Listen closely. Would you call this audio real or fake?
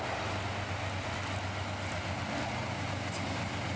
real